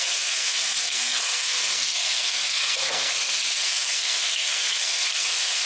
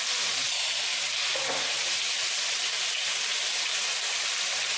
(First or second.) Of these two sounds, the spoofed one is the first